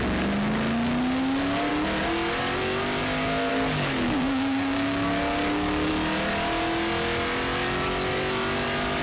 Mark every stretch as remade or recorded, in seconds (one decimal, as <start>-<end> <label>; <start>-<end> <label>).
0.0-3.5 recorded; 3.5-5.9 remade; 5.9-9.0 recorded